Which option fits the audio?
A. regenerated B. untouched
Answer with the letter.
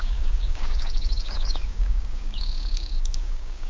A